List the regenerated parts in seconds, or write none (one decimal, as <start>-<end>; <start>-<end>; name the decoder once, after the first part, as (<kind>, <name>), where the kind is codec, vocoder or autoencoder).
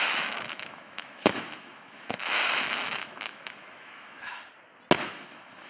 0.0-4.3 (autoencoder, DAC-VAE); 5.0-5.7